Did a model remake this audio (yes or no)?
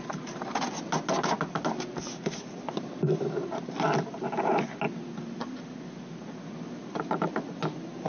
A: no